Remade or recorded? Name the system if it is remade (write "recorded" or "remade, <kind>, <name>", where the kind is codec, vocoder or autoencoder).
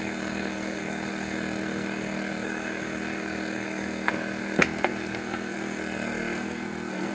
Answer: remade, codec, SNAC